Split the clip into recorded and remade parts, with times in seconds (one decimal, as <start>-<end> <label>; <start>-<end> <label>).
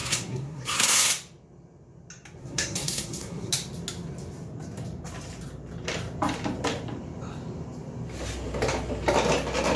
0.0-1.1 remade; 1.1-2.4 recorded; 2.4-3.5 remade; 3.5-9.8 recorded